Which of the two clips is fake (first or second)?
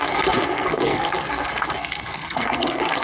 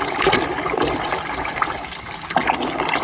first